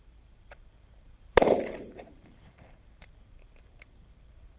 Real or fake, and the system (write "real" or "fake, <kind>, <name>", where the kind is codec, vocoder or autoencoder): fake, vocoder, BigVGAN v2